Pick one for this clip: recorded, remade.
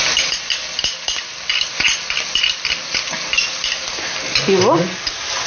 recorded